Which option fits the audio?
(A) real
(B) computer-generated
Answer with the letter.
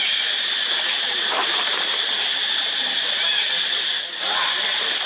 B